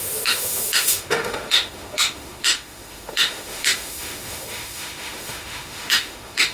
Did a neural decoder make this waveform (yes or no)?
yes